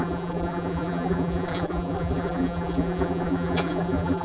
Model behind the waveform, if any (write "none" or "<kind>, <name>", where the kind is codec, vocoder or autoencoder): vocoder, BigVGAN v2